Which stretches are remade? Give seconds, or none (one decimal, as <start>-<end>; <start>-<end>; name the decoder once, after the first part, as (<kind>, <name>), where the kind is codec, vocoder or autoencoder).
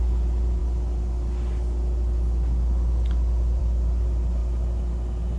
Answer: none